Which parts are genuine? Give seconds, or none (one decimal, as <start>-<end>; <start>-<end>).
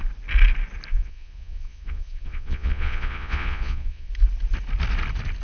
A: 0.0-0.9; 4.1-5.4